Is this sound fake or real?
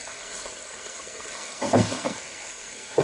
fake